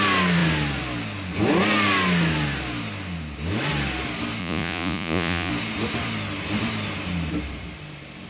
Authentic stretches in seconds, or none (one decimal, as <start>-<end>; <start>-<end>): 0.0-4.4; 5.5-8.3